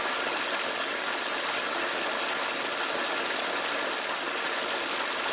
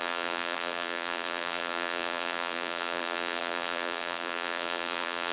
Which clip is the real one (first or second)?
first